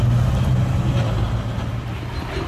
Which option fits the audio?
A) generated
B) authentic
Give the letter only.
B